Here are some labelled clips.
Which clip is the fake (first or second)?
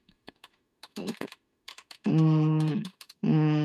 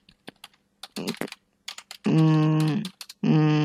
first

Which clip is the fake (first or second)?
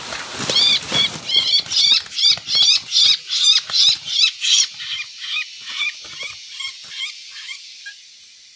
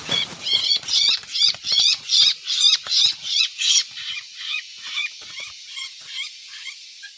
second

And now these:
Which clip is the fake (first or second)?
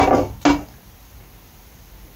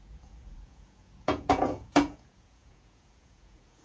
second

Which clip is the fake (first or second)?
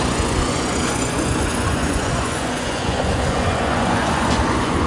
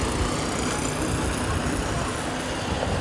first